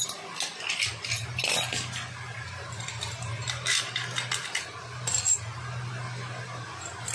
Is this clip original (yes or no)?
yes